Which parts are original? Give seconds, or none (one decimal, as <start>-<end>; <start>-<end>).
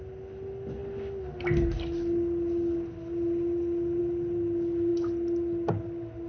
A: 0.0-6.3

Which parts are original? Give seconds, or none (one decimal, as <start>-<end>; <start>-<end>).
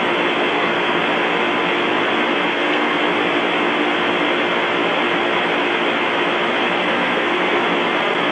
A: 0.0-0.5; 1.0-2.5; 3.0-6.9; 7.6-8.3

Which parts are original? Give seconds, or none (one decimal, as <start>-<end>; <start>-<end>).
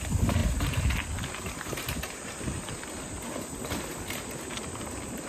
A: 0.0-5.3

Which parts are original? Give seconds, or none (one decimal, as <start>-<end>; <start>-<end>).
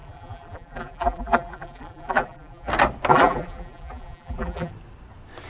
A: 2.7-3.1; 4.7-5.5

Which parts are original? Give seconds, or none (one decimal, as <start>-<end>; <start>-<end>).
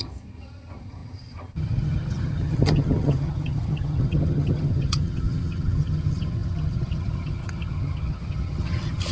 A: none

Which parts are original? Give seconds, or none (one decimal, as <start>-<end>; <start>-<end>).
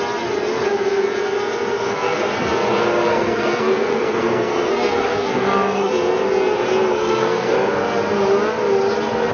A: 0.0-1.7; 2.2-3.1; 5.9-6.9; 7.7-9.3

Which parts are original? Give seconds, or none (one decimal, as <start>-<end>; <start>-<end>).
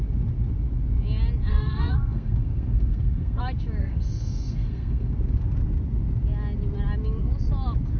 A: 0.0-1.5; 3.4-3.8; 5.1-8.0